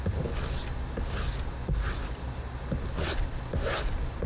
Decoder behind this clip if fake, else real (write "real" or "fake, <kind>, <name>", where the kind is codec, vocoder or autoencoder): real